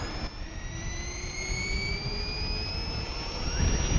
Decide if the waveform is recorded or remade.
recorded